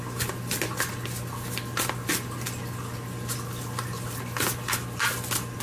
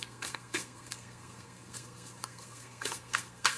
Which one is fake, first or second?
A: second